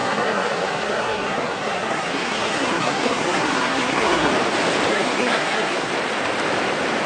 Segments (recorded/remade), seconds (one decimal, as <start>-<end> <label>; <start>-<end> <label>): 0.0-4.3 remade; 4.3-4.9 recorded; 4.9-5.9 remade; 5.9-7.1 recorded